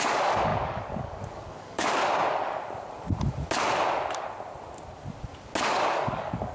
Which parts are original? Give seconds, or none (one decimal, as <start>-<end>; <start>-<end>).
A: 2.0-5.9

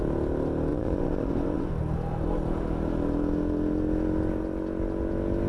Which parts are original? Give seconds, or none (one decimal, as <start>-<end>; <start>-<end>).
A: 0.0-0.7; 1.7-5.5

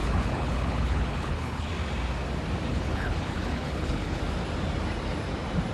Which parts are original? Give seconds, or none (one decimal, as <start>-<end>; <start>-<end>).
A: 1.7-2.7; 4.2-5.7

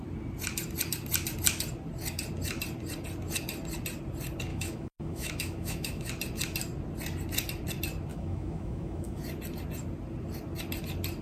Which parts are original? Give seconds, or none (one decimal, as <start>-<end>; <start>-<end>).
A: 0.0-4.5; 6.1-8.1; 9.2-11.2

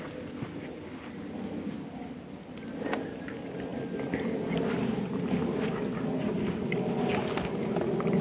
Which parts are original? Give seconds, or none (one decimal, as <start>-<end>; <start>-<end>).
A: 0.0-3.7; 6.7-8.2

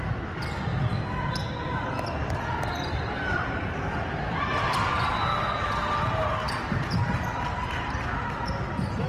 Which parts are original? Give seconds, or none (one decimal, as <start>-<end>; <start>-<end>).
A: 0.7-2.1; 7.0-9.1

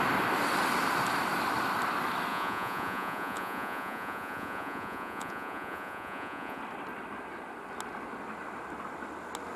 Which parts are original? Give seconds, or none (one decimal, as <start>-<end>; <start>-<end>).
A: 0.0-2.3; 6.6-9.6